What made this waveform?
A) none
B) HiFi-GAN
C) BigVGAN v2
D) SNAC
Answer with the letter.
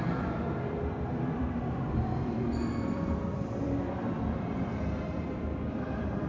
C